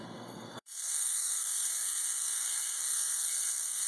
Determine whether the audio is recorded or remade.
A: remade